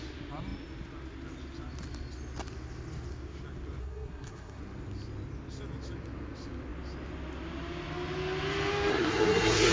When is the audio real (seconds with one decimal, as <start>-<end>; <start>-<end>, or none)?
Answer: 0.0-3.8; 4.6-8.9